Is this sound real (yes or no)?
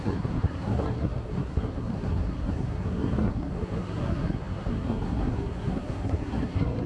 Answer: no